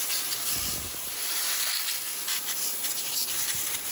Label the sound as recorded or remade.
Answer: remade